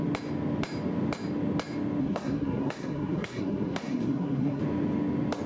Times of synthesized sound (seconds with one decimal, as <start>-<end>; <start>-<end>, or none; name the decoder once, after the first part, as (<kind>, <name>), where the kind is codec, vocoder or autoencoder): 2.0-4.6 (codec, SNAC)